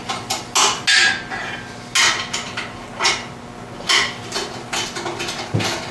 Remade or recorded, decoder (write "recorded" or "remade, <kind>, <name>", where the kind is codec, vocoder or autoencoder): recorded